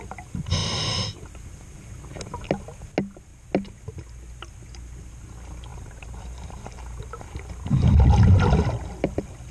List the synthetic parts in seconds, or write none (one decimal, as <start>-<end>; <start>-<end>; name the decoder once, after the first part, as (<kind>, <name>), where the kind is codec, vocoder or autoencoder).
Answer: 0.6-1.3 (vocoder, BigVGAN v2); 5.7-7.0